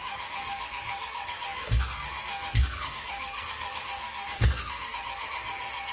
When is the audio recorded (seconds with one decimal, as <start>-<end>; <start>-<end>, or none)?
none